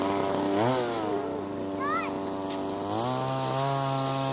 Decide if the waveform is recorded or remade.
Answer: recorded